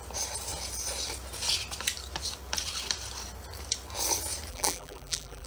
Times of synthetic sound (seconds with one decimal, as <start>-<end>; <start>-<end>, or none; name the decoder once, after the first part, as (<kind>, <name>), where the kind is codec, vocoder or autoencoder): 4.5-5.5 (vocoder, BigVGAN v2)